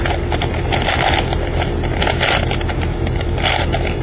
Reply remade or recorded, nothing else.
recorded